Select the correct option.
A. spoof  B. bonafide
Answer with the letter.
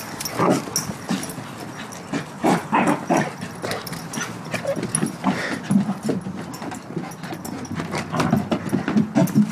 B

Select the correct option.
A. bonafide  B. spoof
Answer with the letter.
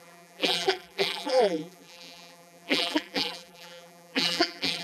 B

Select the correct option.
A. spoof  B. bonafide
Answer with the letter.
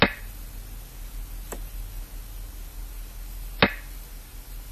B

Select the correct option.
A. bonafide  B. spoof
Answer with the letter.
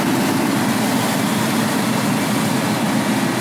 B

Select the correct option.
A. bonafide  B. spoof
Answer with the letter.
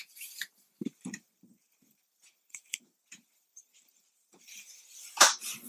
B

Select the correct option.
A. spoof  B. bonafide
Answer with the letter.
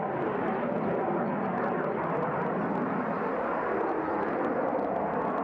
B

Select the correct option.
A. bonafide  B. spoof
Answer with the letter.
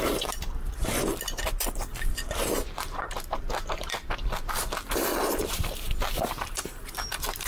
B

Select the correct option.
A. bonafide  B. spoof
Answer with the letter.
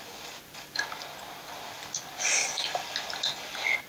A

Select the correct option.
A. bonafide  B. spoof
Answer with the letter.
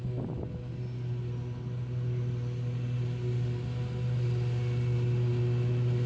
A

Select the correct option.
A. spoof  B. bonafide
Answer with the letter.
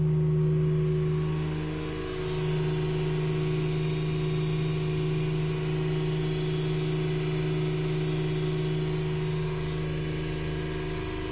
B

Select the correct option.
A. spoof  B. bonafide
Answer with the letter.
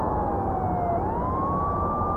B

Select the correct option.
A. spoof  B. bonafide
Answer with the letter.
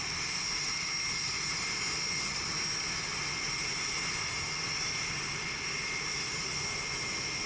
B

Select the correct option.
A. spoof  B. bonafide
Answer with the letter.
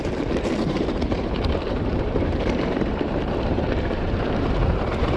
A